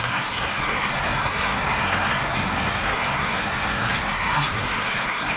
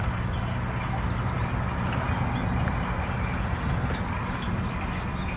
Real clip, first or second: second